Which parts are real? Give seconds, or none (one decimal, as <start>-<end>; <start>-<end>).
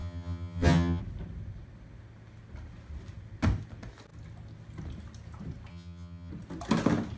1.0-5.7; 6.3-7.2